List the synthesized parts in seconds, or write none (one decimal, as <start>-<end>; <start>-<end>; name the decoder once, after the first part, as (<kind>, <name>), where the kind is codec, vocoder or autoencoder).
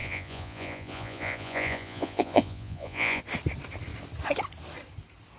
0.0-3.2 (vocoder, Vocos)